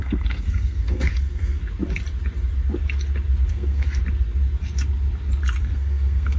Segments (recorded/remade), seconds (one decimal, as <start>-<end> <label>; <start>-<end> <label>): 0.0-1.6 remade; 1.6-3.5 recorded; 3.5-4.0 remade; 4.0-5.6 recorded; 5.6-6.4 remade